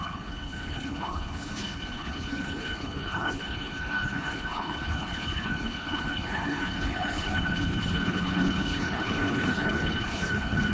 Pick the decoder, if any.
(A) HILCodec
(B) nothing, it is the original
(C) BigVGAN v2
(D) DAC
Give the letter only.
A